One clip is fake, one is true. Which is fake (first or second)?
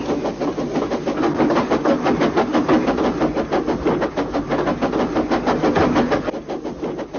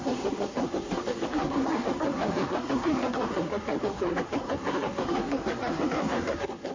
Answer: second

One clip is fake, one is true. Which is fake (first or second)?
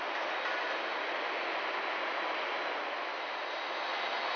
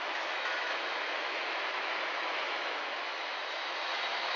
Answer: second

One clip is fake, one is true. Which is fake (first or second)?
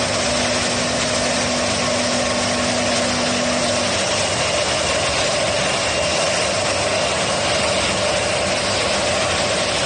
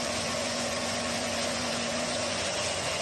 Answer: second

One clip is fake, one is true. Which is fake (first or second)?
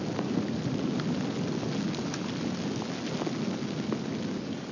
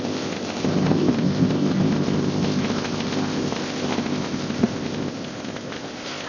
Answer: second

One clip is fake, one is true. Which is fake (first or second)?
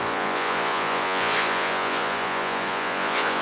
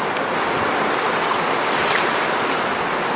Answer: first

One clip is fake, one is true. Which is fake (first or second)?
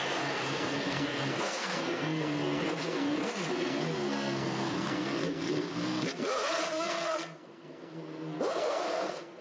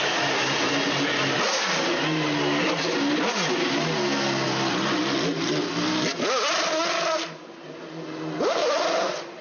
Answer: first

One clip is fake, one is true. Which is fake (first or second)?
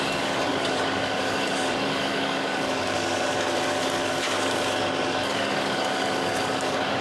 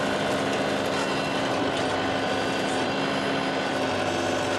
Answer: first